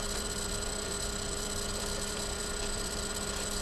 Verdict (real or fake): fake